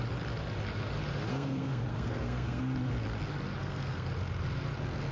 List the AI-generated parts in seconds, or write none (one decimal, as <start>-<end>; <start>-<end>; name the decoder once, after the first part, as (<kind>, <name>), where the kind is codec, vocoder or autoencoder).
1.3-2.6 (codec, SNAC); 3.6-4.1

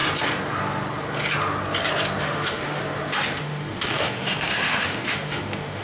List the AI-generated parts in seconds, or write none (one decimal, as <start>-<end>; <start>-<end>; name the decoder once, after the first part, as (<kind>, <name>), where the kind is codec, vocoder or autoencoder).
2.2-2.8 (autoencoder, DAC-VAE); 3.4-5.8